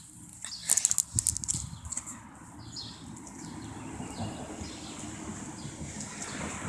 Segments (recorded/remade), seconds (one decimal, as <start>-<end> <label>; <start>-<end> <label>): 0.0-6.7 recorded